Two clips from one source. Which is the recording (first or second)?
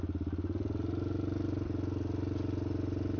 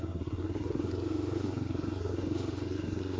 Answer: first